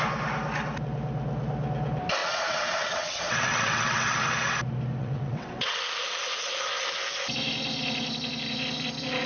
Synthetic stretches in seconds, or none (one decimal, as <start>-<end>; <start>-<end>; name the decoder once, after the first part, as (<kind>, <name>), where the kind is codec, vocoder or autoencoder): 2.2-4.3 (vocoder, WaveNeXt); 5.0-5.8